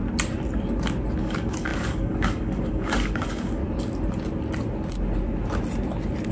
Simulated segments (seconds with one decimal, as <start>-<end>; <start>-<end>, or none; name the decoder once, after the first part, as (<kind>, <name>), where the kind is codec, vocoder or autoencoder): 1.2-3.6 (codec, DAC)